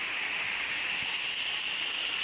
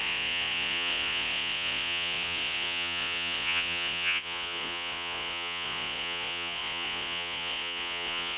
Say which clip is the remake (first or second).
second